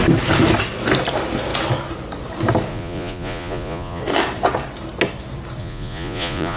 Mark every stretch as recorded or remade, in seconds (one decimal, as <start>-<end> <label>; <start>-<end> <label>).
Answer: 0.0-2.7 recorded; 2.7-4.0 remade; 4.0-5.6 recorded; 5.6-6.6 remade